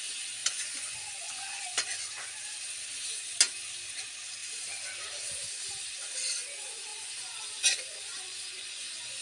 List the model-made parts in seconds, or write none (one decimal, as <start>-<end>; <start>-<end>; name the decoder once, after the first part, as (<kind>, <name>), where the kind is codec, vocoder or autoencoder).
0.4-2.4 (vocoder, Vocos); 6.9-9.2